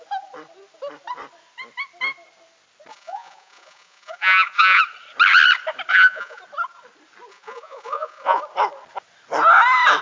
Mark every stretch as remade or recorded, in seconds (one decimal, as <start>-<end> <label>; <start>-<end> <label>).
0.0-2.9 recorded; 2.9-4.8 remade; 4.8-5.9 recorded; 5.9-6.4 remade; 6.4-7.3 recorded; 7.3-8.4 remade; 8.4-10.0 recorded